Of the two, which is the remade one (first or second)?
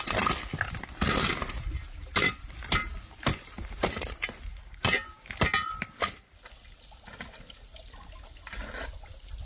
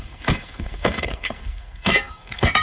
second